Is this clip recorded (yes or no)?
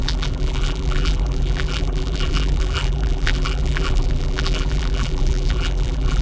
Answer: no